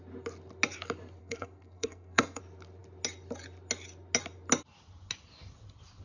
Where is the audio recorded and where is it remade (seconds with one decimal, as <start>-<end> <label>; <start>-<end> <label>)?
0.0-1.2 recorded; 1.2-2.4 remade; 2.4-6.0 recorded